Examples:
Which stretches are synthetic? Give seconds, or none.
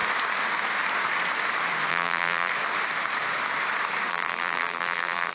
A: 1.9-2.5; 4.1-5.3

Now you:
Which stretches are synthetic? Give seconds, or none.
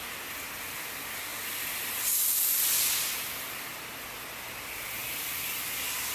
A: none